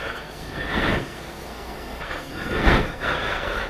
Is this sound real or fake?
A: fake